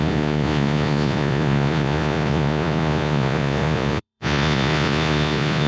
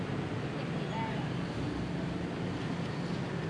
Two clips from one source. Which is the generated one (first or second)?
first